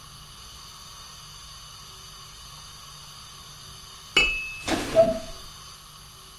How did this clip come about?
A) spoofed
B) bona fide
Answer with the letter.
B